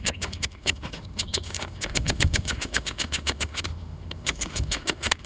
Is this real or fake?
fake